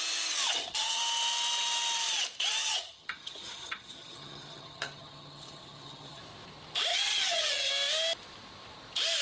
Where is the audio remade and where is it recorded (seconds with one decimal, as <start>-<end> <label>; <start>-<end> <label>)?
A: 0.0-0.5 recorded; 0.5-1.0 remade; 1.0-2.6 recorded; 2.6-6.2 remade; 6.2-6.9 recorded; 6.9-7.7 remade; 7.7-9.2 recorded